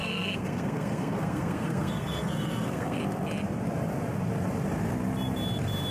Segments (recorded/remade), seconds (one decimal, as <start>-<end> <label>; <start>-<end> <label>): 0.0-3.0 remade; 3.0-5.9 recorded